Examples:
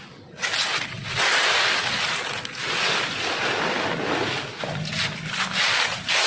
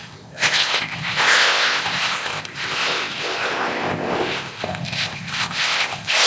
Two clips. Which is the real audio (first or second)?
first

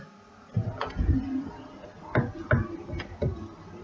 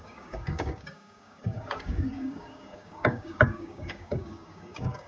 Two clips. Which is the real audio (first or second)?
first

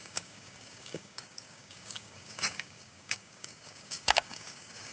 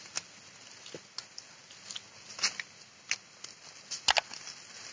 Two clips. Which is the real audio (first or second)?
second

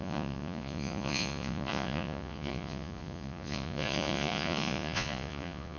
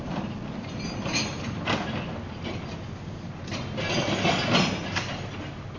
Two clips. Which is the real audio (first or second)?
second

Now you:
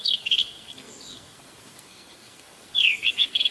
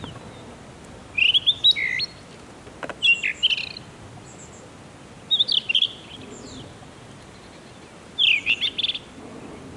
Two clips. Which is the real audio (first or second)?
second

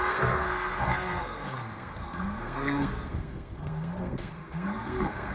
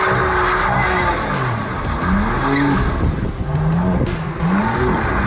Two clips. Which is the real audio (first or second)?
second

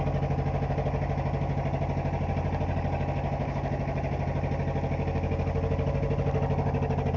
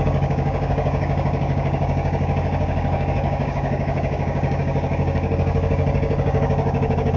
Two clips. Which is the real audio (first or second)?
first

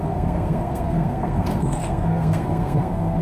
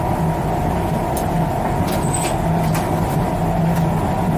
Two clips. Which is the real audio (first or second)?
second